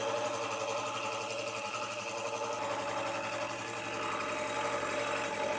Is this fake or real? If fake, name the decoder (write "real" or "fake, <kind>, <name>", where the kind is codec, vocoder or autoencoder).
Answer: real